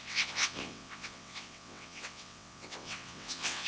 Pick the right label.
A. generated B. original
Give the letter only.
A